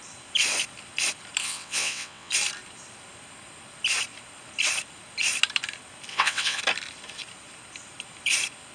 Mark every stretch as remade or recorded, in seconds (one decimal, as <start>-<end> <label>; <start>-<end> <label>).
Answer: 0.0-1.4 recorded; 1.4-2.3 remade; 2.3-6.1 recorded; 6.1-6.6 remade; 6.6-8.7 recorded